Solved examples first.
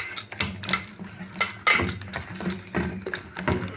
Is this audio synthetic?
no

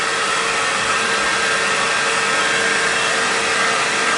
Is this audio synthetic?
no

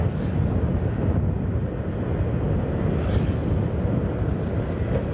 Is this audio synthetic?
no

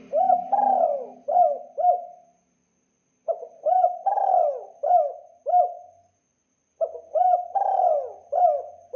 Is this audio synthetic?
no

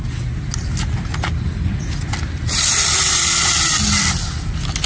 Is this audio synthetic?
no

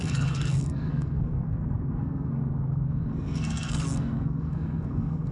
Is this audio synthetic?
yes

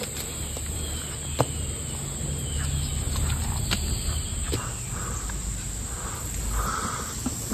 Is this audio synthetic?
no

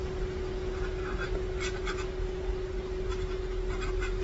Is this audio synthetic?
no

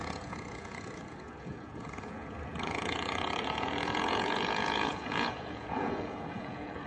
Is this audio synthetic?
yes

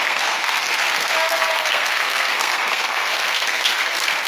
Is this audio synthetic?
yes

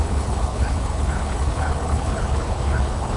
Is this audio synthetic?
yes